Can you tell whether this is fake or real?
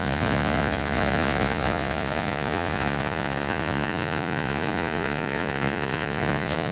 fake